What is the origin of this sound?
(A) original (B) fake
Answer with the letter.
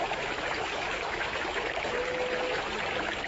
B